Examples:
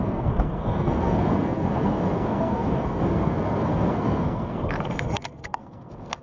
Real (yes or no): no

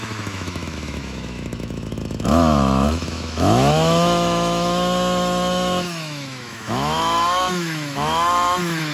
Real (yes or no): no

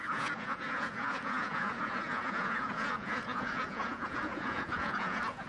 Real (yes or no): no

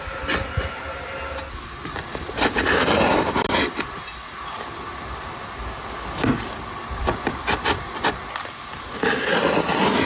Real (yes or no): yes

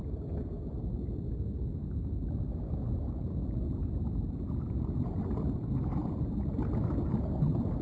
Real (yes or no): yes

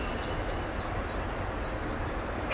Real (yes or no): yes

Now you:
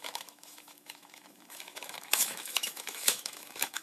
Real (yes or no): no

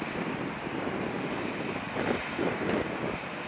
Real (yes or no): no